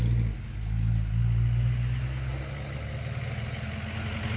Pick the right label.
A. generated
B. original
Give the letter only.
B